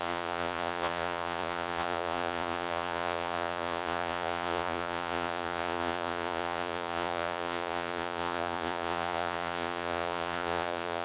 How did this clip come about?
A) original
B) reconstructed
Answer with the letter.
B